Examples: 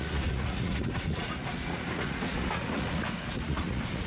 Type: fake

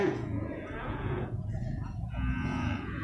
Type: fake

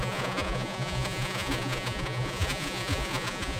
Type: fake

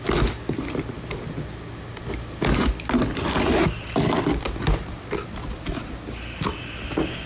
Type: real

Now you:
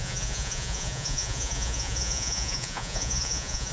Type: fake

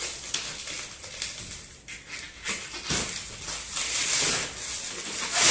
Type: real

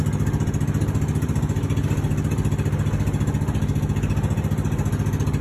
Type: real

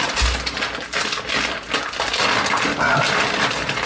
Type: real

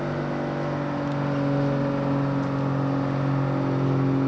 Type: real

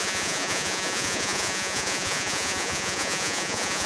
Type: fake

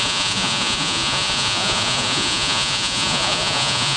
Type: fake